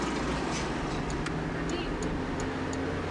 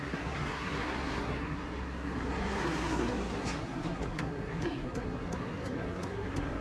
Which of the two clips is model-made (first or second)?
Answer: second